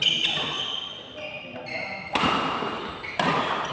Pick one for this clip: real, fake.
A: real